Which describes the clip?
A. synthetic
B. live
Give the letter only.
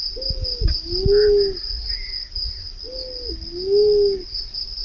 B